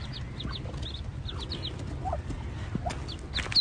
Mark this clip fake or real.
real